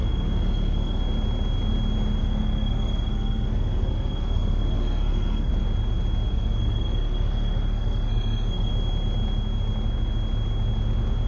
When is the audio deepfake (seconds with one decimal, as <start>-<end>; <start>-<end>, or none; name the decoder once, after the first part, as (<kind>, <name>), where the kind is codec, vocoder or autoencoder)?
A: 0.0-1.0 (codec, SNAC); 2.2-5.5; 6.3-8.7